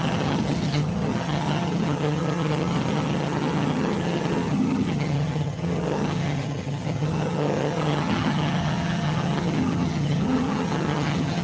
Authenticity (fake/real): fake